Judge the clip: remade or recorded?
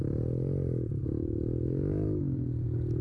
recorded